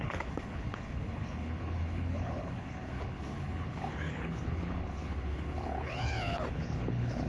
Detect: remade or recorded remade